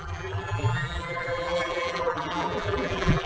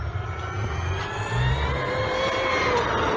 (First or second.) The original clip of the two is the second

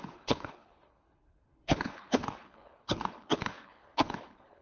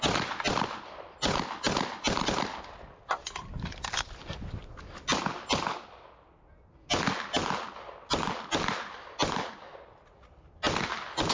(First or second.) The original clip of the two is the second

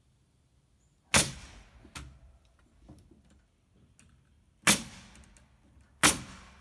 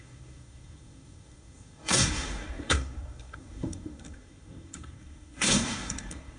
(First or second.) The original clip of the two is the first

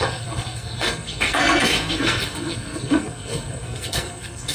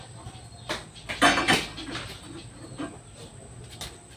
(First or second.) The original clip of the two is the second